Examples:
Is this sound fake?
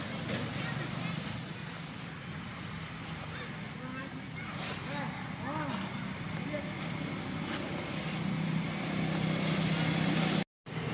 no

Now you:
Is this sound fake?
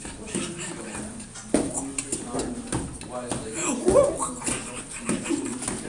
no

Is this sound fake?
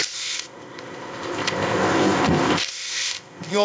yes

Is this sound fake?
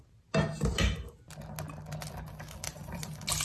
no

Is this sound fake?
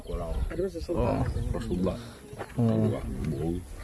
no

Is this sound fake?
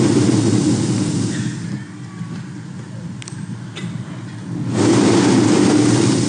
no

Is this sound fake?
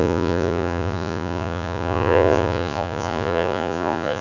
yes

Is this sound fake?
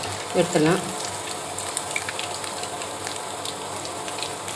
no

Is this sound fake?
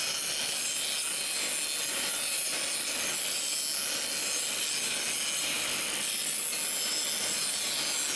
no